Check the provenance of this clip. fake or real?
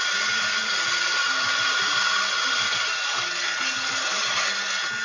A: real